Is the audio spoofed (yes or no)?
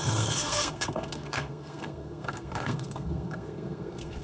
yes